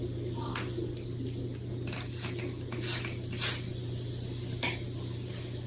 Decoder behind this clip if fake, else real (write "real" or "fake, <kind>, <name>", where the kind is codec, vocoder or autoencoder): real